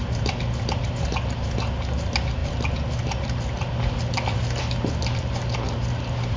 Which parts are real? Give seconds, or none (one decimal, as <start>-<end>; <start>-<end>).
0.0-6.4